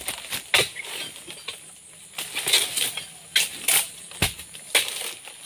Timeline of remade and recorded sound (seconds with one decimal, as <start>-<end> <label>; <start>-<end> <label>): 0.0-5.5 recorded